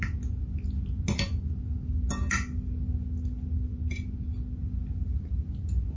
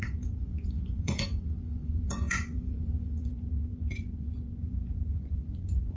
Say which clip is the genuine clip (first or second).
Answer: first